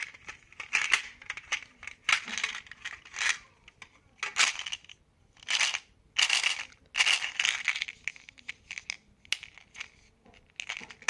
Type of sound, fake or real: real